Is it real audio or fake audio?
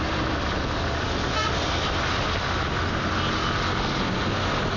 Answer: real